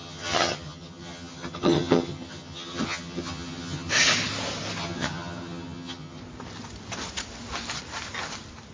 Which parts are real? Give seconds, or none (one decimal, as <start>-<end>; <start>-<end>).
3.9-4.8; 6.2-8.7